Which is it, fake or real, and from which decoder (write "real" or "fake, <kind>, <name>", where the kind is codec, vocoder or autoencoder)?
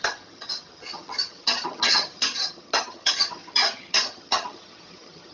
fake, vocoder, HiFi-GAN